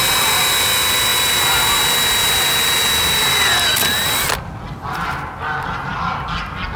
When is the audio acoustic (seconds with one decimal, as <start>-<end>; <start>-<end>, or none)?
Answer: 0.0-6.8